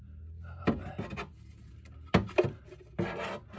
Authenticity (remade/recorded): recorded